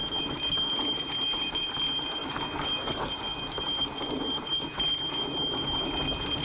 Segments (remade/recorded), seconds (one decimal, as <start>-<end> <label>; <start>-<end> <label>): 0.0-2.2 recorded; 2.2-2.8 remade; 2.8-3.3 recorded; 3.3-3.8 remade; 3.8-6.4 recorded